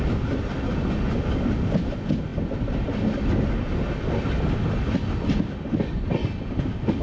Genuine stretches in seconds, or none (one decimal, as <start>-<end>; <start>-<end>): 0.0-7.0